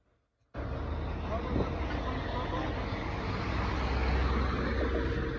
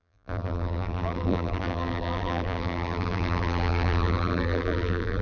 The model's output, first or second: second